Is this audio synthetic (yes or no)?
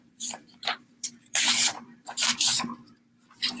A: yes